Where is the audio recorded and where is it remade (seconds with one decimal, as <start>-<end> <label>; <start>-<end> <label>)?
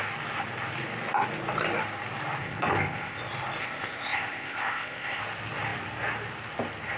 0.0-2.4 recorded; 2.4-3.2 remade; 3.2-3.6 recorded; 3.6-5.2 remade; 5.2-7.0 recorded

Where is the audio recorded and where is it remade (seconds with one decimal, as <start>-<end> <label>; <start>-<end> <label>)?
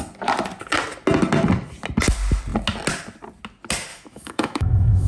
0.0-3.9 recorded; 3.9-5.1 remade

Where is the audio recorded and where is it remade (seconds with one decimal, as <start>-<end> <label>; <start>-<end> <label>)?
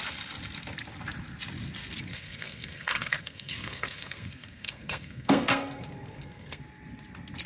0.0-2.1 recorded; 2.1-6.6 remade; 6.6-7.5 recorded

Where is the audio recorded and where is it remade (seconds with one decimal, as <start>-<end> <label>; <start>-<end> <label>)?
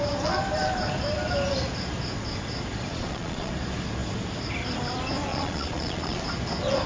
0.0-2.9 recorded; 2.9-3.5 remade; 3.5-5.3 recorded; 5.3-6.2 remade; 6.2-6.9 recorded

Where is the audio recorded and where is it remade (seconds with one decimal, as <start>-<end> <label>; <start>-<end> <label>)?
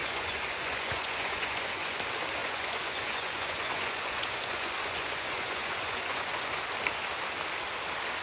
0.0-2.0 remade; 2.0-2.4 recorded; 2.4-6.6 remade; 6.6-8.2 recorded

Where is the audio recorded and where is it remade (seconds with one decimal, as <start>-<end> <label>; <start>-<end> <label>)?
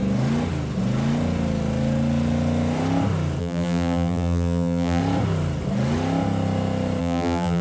0.0-3.4 recorded; 3.4-5.0 remade; 5.0-7.0 recorded; 7.0-7.6 remade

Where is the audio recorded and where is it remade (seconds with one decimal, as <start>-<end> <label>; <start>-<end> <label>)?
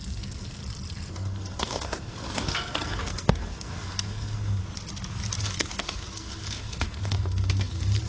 0.0-0.6 remade; 0.6-1.1 recorded; 1.1-4.6 remade; 4.6-5.4 recorded; 5.4-8.1 remade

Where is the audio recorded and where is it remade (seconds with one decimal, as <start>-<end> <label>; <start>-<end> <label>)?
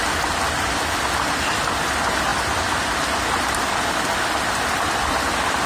0.0-5.7 recorded